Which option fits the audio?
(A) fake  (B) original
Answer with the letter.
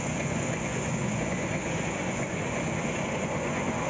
A